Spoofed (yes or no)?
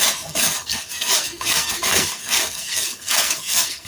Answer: yes